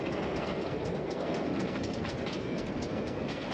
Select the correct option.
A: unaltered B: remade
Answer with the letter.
B